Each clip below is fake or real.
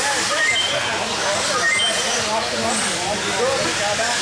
real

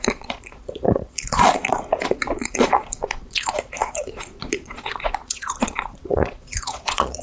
fake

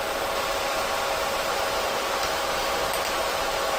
real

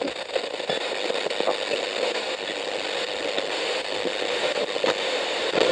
real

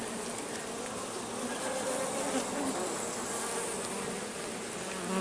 real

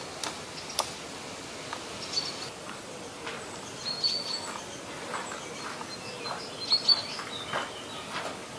real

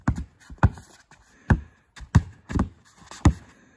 real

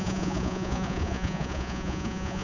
fake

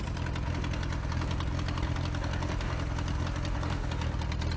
real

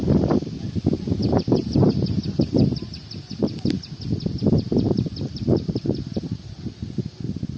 real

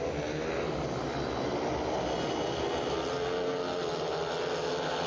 real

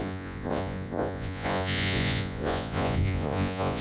fake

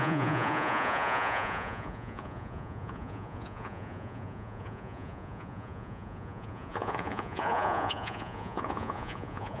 fake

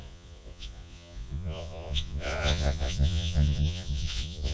fake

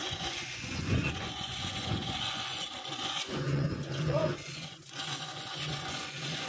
fake